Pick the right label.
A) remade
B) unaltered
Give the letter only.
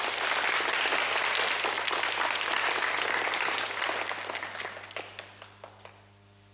B